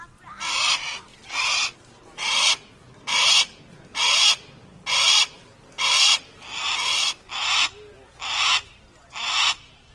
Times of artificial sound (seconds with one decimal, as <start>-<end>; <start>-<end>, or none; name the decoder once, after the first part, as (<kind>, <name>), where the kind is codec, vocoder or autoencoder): none